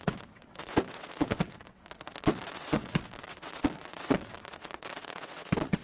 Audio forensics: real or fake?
fake